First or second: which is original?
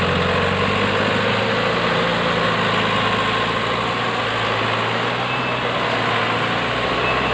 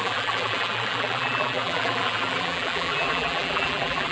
first